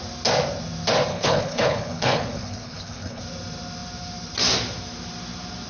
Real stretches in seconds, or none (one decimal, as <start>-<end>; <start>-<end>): 0.0-1.1; 3.2-5.7